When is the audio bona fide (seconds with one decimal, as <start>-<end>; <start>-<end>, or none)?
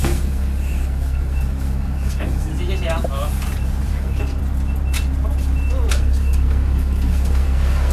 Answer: 2.5-3.9; 4.4-5.9